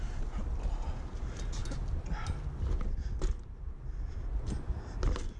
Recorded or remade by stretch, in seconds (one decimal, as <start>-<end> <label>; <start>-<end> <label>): 0.0-5.4 recorded